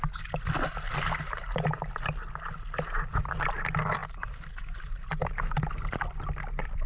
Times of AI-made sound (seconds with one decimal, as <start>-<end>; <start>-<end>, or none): none